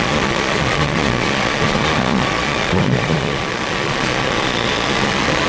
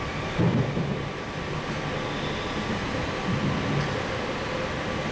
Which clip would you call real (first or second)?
second